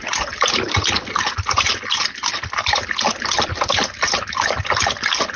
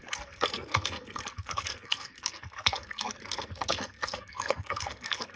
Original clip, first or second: first